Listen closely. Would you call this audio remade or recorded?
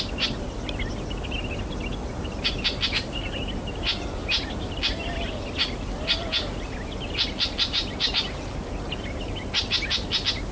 recorded